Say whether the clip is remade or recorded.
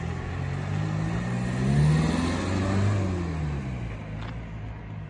recorded